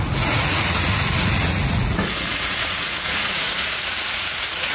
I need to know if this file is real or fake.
fake